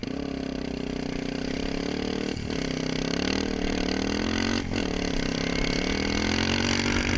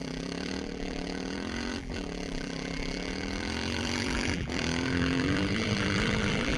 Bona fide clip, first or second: first